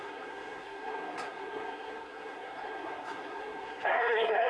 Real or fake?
fake